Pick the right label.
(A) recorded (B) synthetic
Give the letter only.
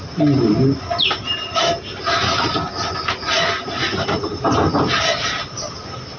A